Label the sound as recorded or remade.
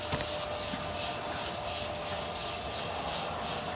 recorded